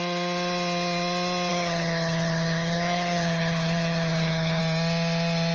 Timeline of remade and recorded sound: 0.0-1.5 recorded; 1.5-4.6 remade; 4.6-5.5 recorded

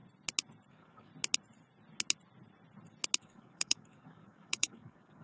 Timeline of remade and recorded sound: 0.0-0.7 recorded; 0.7-1.1 remade; 1.1-3.2 recorded; 3.2-5.2 remade

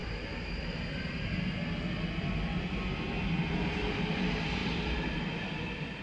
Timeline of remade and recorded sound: 0.0-0.7 remade; 0.7-4.6 recorded; 4.6-6.0 remade

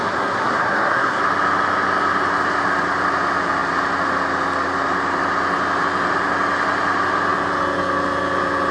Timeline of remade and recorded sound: 0.0-1.2 remade; 1.2-8.7 recorded

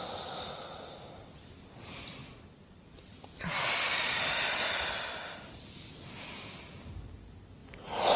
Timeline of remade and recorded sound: 0.0-8.2 recorded

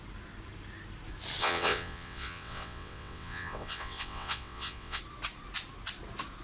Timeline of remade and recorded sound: 0.0-1.4 recorded; 1.4-5.0 remade; 5.0-6.4 recorded

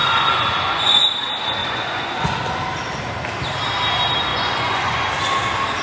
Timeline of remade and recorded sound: 0.0-1.1 remade; 1.1-1.6 recorded; 1.6-2.3 remade; 2.3-4.3 recorded; 4.3-5.1 remade; 5.1-5.8 recorded